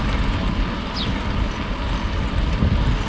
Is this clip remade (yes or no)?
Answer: no